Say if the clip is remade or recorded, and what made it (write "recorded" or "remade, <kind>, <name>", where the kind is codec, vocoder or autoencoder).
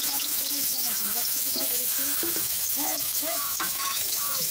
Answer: remade, autoencoder, DAC-VAE